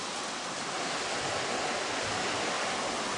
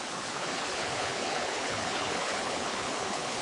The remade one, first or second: second